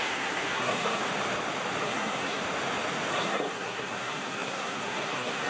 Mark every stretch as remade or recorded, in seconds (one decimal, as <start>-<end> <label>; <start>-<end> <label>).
0.0-1.0 remade; 1.0-1.8 recorded; 1.8-2.4 remade; 2.4-3.1 recorded; 3.1-5.5 remade